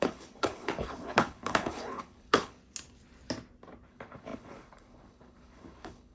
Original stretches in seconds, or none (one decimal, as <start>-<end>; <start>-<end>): 2.6-3.9